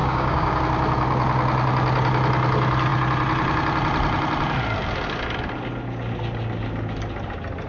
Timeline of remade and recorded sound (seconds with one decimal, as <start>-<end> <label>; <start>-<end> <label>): 0.0-0.6 remade; 0.6-7.7 recorded